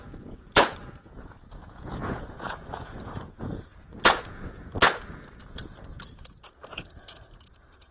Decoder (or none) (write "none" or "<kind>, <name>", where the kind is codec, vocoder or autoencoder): vocoder, Vocos